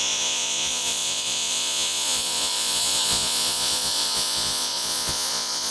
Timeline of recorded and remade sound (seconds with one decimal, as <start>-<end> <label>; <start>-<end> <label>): 0.0-5.7 remade